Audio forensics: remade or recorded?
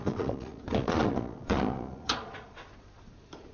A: remade